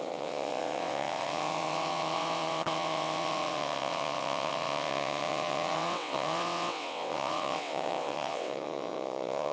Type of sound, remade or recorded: remade